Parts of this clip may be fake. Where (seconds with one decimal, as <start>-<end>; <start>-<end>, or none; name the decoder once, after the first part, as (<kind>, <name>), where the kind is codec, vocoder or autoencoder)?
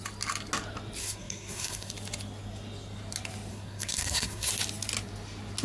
1.0-1.9 (codec, SNAC); 3.5-4.5